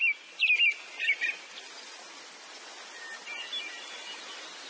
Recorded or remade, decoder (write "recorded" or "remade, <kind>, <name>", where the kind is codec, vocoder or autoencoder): recorded